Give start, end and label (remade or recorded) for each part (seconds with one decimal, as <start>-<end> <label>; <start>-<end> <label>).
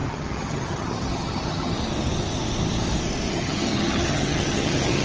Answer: 0.0-1.8 remade; 1.8-3.3 recorded; 3.3-5.0 remade